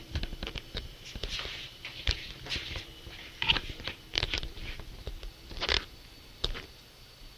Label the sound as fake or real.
fake